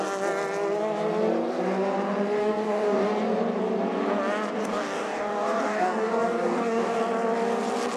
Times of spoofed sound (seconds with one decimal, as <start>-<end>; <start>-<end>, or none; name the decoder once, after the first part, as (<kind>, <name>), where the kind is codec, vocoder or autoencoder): 2.4-3.1 (codec, DAC); 4.6-7.0